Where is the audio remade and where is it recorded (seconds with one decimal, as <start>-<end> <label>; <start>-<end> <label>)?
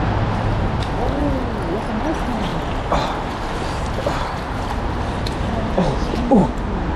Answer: 0.0-1.2 remade; 1.2-2.0 recorded; 2.0-2.5 remade; 2.5-3.7 recorded; 3.7-7.0 remade